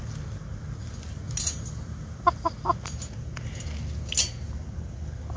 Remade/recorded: recorded